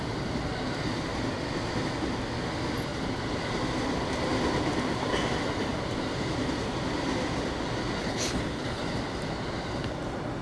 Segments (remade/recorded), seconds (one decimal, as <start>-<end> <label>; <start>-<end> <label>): 0.0-8.0 recorded; 8.0-8.8 remade; 8.8-10.4 recorded